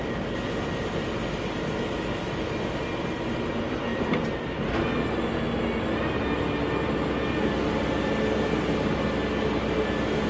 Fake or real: real